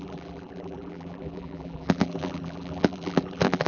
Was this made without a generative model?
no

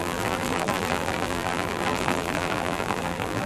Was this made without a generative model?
no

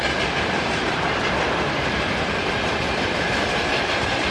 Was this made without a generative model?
no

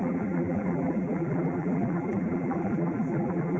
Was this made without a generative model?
no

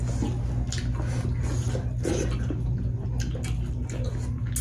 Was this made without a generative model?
yes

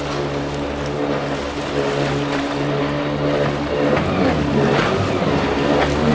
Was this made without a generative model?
yes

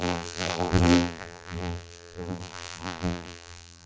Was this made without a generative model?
no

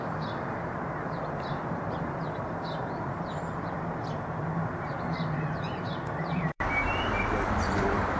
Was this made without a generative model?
no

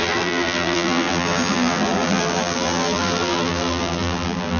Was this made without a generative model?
no